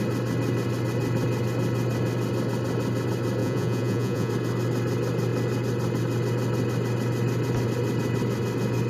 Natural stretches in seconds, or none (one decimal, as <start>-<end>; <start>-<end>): 0.0-3.4; 4.3-8.9